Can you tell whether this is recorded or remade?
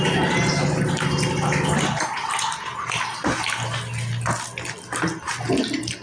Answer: recorded